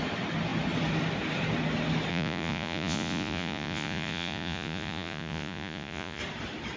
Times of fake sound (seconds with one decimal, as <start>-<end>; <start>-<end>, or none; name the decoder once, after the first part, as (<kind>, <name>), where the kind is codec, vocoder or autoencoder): 2.1-6.2 (vocoder, Vocos)